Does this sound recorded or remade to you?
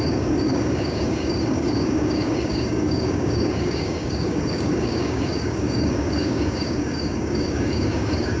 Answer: remade